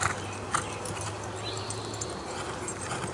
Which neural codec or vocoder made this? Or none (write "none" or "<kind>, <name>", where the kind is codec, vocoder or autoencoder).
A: none